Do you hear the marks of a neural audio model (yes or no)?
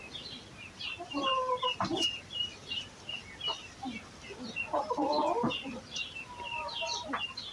no